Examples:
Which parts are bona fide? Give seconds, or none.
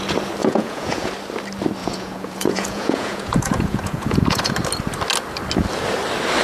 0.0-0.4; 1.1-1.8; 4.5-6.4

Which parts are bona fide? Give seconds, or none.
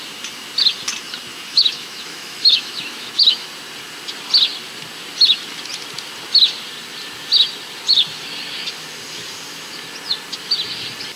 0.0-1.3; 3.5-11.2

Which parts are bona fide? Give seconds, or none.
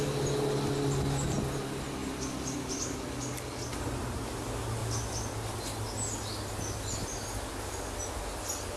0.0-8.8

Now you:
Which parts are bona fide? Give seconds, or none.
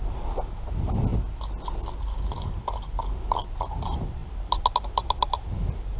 0.0-6.0